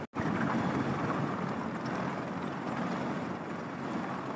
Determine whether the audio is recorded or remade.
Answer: recorded